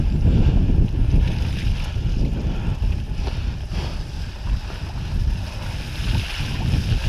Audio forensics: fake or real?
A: real